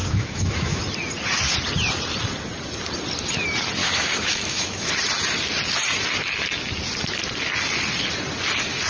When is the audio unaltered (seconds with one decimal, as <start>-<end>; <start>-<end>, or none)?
0.8-3.8; 4.9-8.9